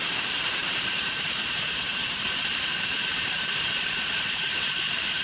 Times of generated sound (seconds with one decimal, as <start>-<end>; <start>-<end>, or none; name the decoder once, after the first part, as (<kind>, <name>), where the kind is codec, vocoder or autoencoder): 0.0-5.2 (vocoder, BigVGAN v2)